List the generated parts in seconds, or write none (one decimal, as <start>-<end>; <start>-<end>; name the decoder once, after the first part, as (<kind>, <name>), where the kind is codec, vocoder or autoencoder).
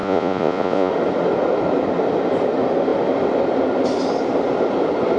0.0-0.9 (vocoder, Vocos)